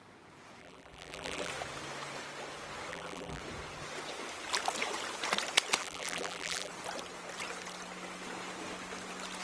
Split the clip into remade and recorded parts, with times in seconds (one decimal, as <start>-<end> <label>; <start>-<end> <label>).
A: 0.0-0.6 recorded; 0.6-1.5 remade; 1.5-2.9 recorded; 2.9-3.4 remade; 3.4-5.8 recorded; 5.8-6.7 remade; 6.7-9.4 recorded